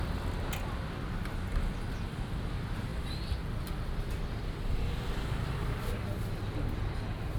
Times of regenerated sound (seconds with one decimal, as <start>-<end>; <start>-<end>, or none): none